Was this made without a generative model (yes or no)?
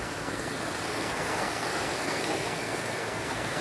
no